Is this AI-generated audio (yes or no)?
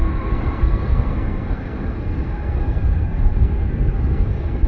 yes